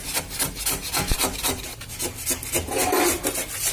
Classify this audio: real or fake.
real